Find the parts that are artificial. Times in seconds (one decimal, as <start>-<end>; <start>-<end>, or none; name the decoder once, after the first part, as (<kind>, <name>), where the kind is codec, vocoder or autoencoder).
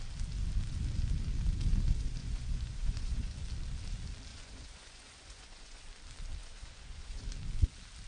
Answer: 2.2-3.4 (vocoder, Vocos); 4.3-5.8; 6.4-7.2